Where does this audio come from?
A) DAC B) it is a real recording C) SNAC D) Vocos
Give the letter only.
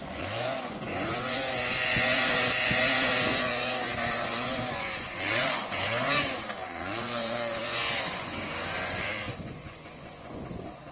D